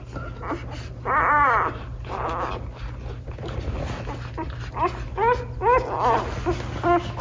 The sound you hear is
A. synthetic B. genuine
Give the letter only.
B